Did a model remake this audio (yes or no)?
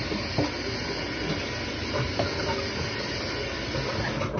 no